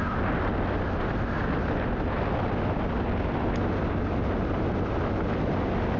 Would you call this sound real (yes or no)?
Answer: yes